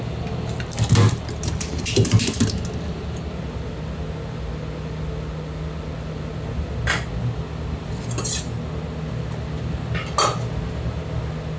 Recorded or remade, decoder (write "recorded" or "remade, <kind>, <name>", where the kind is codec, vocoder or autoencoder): recorded